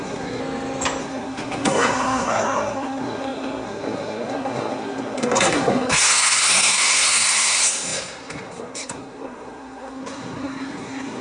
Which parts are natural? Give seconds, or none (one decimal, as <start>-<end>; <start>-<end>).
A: 0.4-1.0